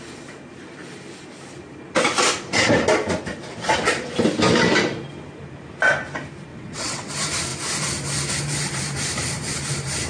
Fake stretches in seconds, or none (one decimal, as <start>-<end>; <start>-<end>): 6.5-7.1